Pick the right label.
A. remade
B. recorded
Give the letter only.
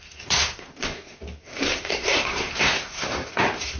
A